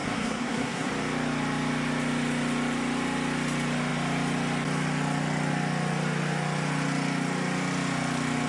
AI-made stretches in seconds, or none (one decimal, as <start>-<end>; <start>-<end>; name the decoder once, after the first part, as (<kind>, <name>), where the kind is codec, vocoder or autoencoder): 0.0-0.9 (codec, SNAC)